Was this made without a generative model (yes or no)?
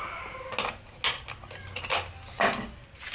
yes